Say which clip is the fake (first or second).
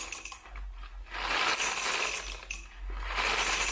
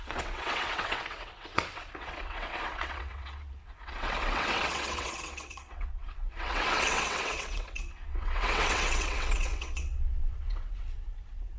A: second